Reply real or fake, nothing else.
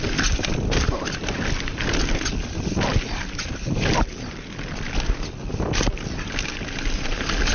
real